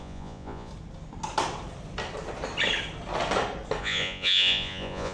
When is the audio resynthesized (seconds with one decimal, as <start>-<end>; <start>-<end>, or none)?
0.0-0.7; 3.8-5.1